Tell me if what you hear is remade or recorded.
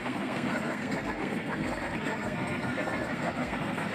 remade